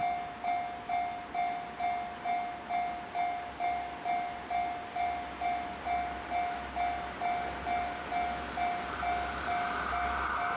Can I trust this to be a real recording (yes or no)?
yes